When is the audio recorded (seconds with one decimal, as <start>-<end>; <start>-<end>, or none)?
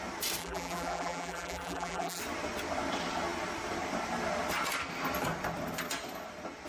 0.0-0.4; 2.2-6.7